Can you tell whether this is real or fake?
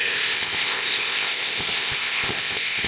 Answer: fake